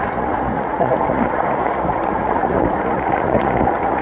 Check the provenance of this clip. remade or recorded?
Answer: remade